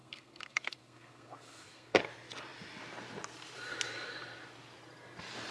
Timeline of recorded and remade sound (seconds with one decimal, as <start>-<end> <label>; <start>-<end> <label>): 0.0-2.0 remade; 2.0-5.5 recorded